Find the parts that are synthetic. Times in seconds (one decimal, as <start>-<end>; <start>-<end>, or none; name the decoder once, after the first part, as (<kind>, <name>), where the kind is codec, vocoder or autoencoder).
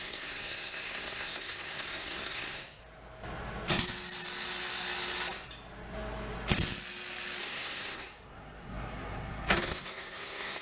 0.0-2.8 (codec, SNAC); 7.4-10.6